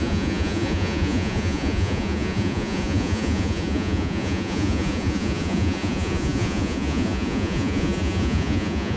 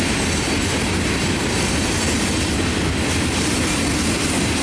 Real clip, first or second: second